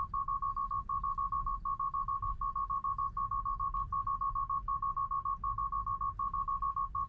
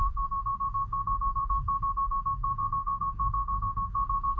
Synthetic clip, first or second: second